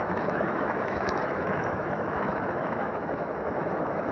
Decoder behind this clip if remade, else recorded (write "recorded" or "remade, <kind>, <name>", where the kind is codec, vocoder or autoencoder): remade, autoencoder, DAC-VAE